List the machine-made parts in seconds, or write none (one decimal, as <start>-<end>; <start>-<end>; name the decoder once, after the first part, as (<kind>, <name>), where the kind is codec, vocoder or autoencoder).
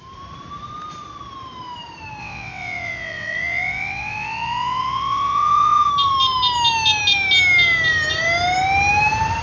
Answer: 2.2-5.9 (vocoder, WaveNeXt)